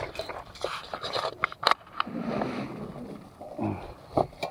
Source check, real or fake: real